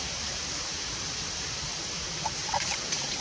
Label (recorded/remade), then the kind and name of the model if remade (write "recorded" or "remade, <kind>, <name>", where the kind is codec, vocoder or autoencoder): remade, vocoder, BigVGAN v2